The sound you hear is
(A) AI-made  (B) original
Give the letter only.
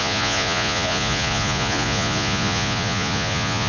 A